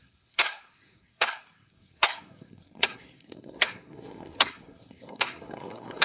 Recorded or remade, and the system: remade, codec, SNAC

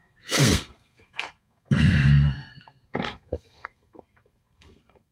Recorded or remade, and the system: remade, codec, SNAC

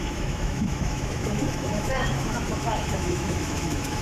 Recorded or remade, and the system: remade, autoencoder, DAC-VAE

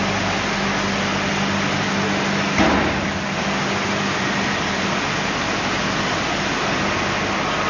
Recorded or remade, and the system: recorded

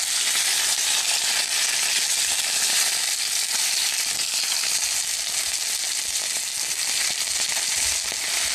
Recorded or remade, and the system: recorded